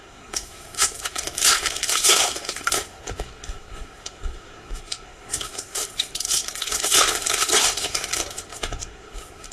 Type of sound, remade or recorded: remade